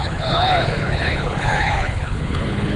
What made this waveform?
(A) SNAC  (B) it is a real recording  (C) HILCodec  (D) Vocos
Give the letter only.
C